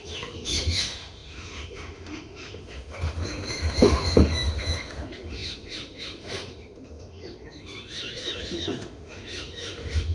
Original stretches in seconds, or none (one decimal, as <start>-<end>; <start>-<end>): none